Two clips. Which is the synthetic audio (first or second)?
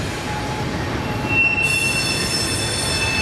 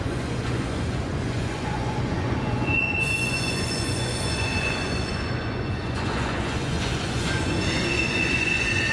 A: second